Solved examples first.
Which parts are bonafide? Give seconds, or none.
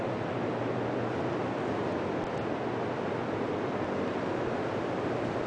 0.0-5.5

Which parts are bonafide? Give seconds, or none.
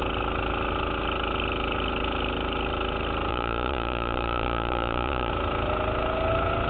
0.0-3.3; 5.3-6.7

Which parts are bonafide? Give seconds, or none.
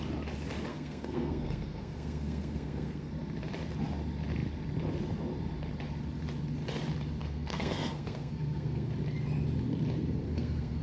0.0-0.7; 3.1-7.2; 8.9-10.2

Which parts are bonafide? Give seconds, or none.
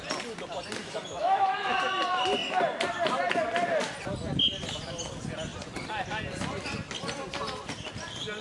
0.0-0.8; 1.8-8.4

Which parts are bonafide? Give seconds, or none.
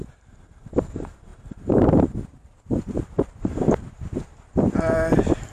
none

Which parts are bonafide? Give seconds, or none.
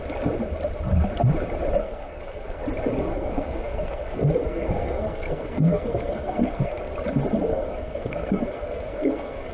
0.0-1.8; 2.6-3.1; 6.8-7.5